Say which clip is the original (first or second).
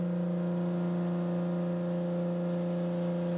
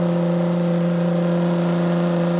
first